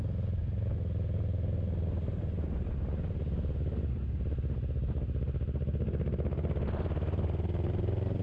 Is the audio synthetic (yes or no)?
no